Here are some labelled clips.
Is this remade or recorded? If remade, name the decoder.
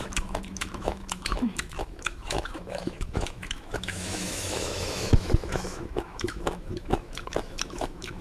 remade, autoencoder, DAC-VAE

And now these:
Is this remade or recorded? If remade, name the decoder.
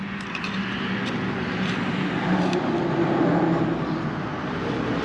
recorded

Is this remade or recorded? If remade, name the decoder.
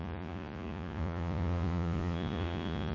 remade, vocoder, Vocos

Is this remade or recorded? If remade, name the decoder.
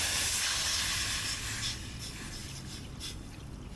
recorded